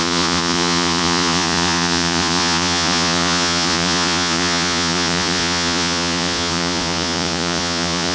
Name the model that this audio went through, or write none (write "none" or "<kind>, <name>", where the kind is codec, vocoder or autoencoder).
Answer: vocoder, Vocos